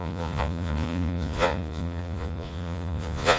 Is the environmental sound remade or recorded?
remade